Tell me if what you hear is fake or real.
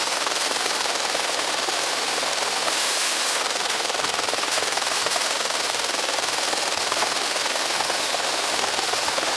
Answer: fake